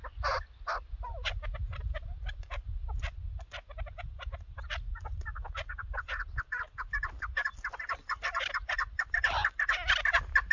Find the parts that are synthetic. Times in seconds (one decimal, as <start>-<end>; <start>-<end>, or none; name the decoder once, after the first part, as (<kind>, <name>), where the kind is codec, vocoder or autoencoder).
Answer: none